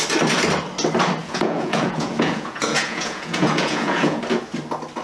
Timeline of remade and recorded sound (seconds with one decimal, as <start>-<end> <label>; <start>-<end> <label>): 0.0-1.2 recorded; 1.2-4.2 remade; 4.2-5.0 recorded